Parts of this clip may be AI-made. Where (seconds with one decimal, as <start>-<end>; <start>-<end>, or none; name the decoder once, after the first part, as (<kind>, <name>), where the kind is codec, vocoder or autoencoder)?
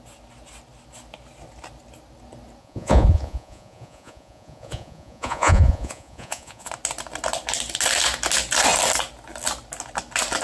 2.6-6.7 (vocoder, Vocos)